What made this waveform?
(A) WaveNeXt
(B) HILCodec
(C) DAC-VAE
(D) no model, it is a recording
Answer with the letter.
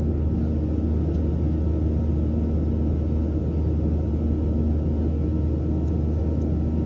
D